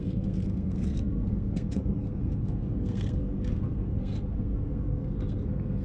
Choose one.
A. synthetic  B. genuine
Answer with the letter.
A